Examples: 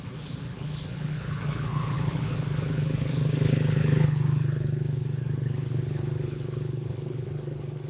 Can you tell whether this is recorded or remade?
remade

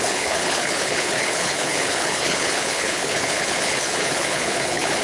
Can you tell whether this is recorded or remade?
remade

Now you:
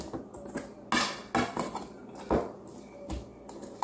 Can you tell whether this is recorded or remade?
recorded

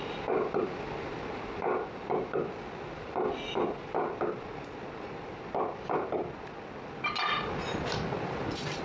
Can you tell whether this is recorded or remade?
recorded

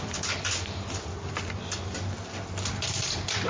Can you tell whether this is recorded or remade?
recorded